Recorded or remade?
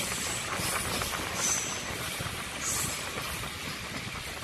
recorded